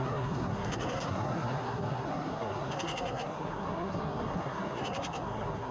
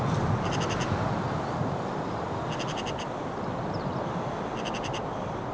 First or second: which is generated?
first